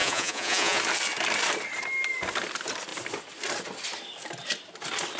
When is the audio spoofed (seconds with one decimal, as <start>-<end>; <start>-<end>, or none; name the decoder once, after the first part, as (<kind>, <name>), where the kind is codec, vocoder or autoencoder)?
0.0-0.8 (vocoder, Vocos)